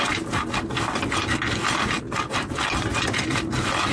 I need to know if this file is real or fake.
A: real